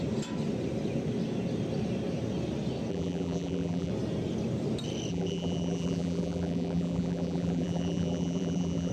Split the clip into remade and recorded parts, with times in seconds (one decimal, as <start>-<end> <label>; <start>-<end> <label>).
0.0-2.9 recorded; 2.9-3.9 remade; 3.9-5.1 recorded; 5.1-8.9 remade